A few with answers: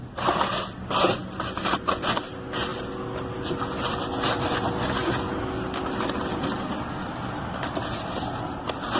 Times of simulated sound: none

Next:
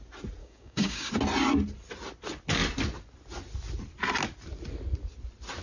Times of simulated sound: 0.4-1.1 (codec, DAC)

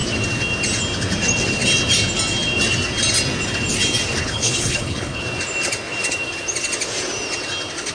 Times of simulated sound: 4.2-5.2 (codec, HILCodec)

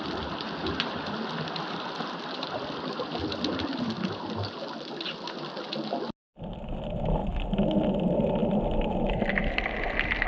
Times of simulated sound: none

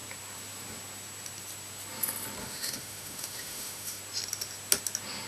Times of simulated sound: 2.4-4.0 (autoencoder, DAC-VAE)

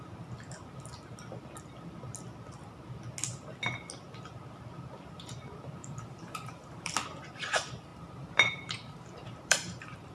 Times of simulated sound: 5.8-6.9 (vocoder, BigVGAN v2); 7.9-10.1